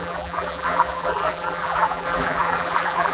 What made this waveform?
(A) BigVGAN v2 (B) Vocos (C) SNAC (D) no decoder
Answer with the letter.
A